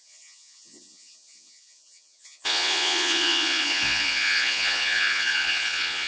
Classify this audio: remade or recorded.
remade